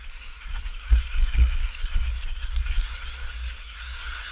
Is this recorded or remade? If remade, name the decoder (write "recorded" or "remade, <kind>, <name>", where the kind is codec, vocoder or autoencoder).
remade, codec, SNAC